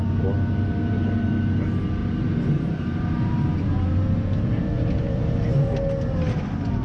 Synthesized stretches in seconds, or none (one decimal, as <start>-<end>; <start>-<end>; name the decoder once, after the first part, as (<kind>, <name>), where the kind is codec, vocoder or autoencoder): 2.0-5.8 (vocoder, BigVGAN v2)

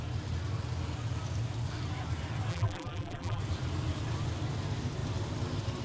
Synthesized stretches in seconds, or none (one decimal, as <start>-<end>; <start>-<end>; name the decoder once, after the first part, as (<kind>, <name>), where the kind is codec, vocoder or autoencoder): 2.5-3.4 (vocoder, BigVGAN v2)

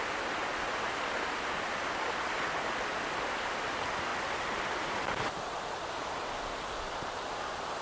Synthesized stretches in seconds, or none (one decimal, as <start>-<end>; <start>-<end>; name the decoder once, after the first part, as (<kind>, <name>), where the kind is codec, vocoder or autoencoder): 0.4-2.0 (vocoder, BigVGAN v2)